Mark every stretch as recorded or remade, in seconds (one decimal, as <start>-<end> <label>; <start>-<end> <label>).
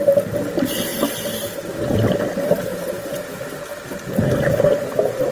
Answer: 0.0-0.9 recorded; 0.9-1.6 remade; 1.6-5.3 recorded